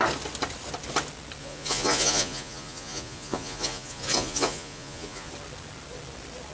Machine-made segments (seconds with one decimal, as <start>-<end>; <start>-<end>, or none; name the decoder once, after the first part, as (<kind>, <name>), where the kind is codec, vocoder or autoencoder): 1.4-5.3 (vocoder, Vocos)

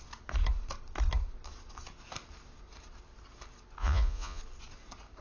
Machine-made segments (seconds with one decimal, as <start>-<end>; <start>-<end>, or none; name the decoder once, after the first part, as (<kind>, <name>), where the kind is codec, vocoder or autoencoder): 3.8-4.4 (vocoder, Vocos)

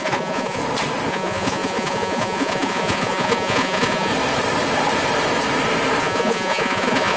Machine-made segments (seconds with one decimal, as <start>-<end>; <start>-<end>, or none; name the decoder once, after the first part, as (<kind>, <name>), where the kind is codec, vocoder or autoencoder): 0.0-0.6 (vocoder, Vocos); 1.1-4.1; 6.0-7.2

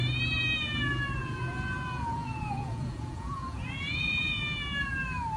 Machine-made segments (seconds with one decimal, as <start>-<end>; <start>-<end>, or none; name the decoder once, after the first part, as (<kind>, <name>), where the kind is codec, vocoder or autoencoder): 1.2-4.4 (vocoder, Vocos)

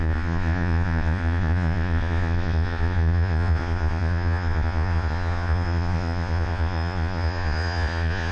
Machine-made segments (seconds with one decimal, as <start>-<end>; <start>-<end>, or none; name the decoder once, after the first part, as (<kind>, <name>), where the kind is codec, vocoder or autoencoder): 0.0-8.3 (vocoder, Vocos)

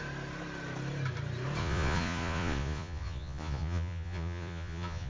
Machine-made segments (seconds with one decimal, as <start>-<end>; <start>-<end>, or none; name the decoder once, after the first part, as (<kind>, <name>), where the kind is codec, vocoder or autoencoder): 1.6-5.1 (vocoder, Vocos)

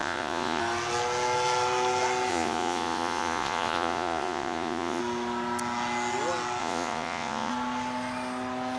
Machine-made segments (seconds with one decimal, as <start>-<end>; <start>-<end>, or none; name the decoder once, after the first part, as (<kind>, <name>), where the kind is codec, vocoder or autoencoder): 0.0-0.6 (vocoder, Vocos); 2.3-5.0; 6.6-7.5

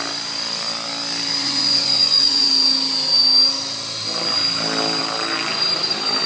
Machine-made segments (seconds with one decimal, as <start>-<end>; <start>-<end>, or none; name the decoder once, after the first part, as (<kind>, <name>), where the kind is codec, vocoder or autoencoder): 1.4-2.5 (vocoder, Vocos)